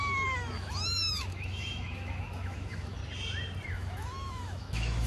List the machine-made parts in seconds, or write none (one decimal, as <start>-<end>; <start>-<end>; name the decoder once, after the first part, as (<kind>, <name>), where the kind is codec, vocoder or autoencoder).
0.0-3.0 (autoencoder, DAC-VAE); 3.7-5.1